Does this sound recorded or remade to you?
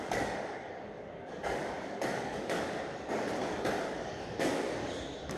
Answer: remade